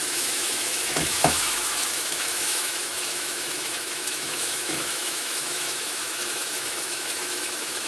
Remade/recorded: remade